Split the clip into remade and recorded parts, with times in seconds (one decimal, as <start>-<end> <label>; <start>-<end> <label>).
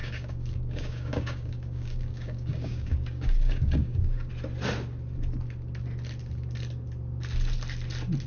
0.0-4.3 remade; 4.3-8.3 recorded